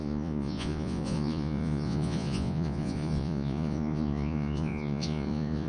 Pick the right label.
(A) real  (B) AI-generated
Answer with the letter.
B